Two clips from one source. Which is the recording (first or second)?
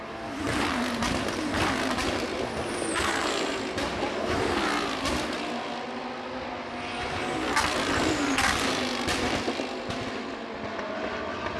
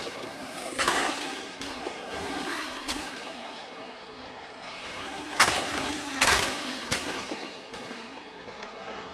first